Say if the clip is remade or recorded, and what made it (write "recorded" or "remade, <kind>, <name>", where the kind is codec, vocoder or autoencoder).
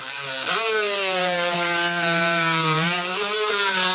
remade, vocoder, BigVGAN v2